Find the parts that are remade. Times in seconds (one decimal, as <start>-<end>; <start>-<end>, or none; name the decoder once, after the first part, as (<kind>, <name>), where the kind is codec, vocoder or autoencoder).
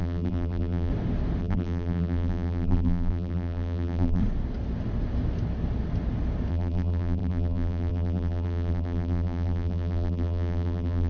0.0-0.9 (vocoder, BigVGAN v2); 1.4-4.2; 6.5-11.1